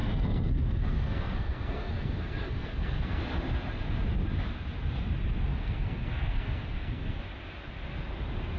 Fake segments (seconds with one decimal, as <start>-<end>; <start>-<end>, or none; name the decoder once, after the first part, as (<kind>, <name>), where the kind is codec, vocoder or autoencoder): 0.0-3.2 (codec, SNAC); 5.5-7.2

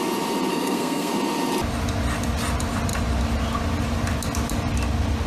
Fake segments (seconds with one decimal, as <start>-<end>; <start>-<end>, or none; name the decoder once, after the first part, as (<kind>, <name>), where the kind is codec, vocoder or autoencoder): 0.5-1.1 (codec, SNAC)

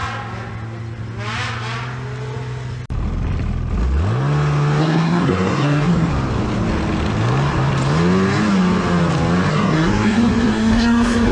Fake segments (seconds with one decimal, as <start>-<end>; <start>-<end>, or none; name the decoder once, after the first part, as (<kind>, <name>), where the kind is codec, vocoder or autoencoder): 4.8-6.1 (codec, SNAC); 9.5-11.3

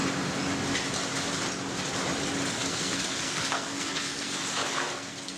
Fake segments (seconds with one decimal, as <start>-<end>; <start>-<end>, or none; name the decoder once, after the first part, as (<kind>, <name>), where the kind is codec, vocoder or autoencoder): 2.6-5.4 (codec, SNAC)

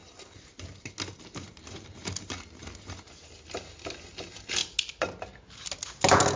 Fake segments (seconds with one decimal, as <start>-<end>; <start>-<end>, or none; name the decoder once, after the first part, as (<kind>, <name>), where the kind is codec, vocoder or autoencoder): none

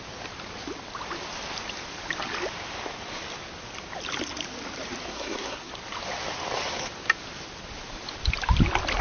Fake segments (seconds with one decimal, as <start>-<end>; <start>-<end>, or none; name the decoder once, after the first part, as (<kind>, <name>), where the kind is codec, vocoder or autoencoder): 5.1-5.7 (codec, SNAC)